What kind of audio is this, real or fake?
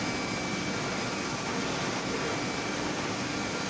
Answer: real